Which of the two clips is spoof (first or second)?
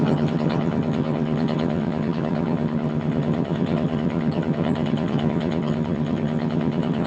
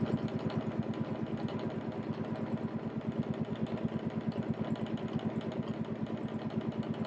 first